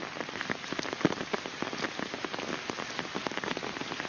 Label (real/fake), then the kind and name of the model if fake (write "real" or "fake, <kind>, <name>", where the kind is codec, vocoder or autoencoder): real